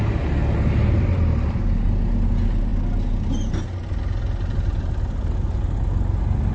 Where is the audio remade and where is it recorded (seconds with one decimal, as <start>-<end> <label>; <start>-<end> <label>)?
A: 0.0-6.5 recorded